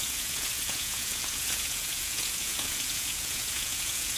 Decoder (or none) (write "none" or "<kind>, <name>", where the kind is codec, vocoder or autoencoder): vocoder, Vocos